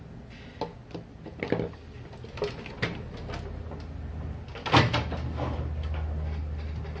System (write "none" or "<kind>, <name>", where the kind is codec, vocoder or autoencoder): none